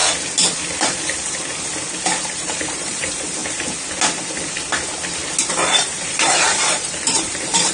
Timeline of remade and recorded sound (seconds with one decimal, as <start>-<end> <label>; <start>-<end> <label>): 0.0-2.2 recorded; 2.2-3.4 remade; 3.4-5.5 recorded; 5.5-7.7 remade